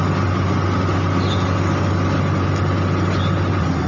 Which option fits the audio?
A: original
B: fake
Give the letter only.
A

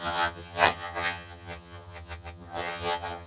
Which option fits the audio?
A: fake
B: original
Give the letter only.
A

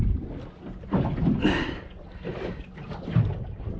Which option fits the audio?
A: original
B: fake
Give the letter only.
A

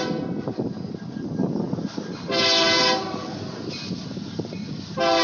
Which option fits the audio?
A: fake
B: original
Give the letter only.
B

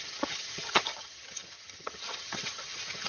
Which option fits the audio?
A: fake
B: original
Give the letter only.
A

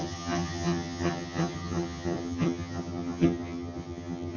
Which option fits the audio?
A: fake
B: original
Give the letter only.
A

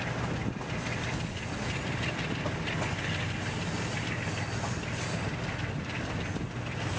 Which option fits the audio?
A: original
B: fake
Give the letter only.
A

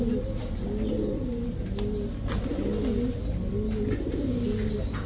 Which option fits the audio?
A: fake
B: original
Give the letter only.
B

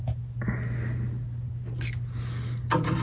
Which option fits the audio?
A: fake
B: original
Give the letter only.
B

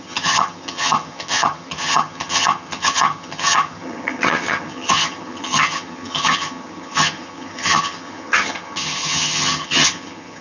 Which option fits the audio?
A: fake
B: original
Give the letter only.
A